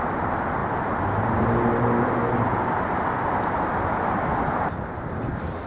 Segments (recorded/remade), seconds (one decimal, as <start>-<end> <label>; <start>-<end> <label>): 0.0-5.7 recorded